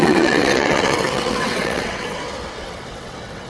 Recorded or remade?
remade